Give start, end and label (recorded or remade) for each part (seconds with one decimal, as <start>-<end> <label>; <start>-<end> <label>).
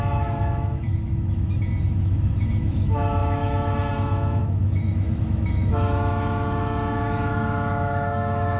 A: 0.0-8.6 remade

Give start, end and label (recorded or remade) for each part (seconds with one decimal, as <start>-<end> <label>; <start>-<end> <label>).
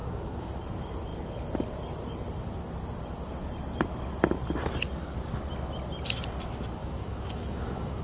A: 0.0-0.5 remade; 0.5-6.8 recorded; 6.8-8.0 remade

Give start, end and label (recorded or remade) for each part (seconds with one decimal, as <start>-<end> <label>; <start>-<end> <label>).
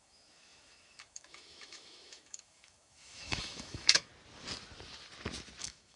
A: 0.0-4.1 remade; 4.1-5.6 recorded; 5.6-6.0 remade